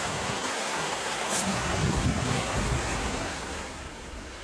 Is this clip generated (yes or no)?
yes